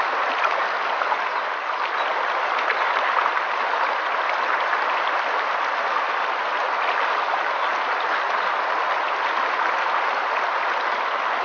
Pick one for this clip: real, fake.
real